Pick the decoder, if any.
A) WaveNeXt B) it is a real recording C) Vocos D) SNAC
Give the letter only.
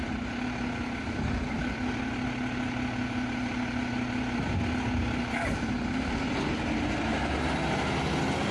B